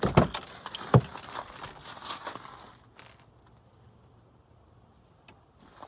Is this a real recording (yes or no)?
yes